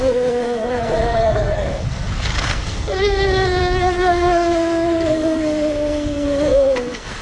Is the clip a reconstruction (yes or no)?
yes